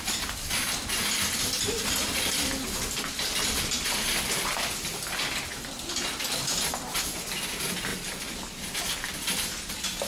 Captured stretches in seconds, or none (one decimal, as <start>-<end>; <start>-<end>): 0.0-10.1